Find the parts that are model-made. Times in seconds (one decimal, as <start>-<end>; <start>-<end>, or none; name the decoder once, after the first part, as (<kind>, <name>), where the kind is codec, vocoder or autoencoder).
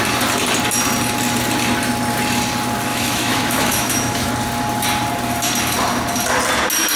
2.9-4.3 (autoencoder, DAC-VAE)